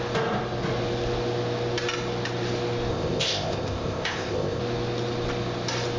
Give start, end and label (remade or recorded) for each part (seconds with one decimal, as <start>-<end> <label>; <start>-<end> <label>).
0.0-2.9 recorded; 2.9-4.6 remade; 4.6-6.0 recorded